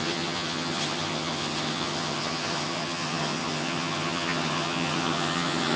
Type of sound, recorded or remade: remade